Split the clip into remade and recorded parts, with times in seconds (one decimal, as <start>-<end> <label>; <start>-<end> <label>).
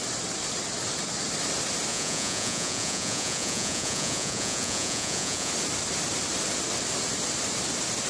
0.0-1.9 recorded; 1.9-5.5 remade; 5.5-8.1 recorded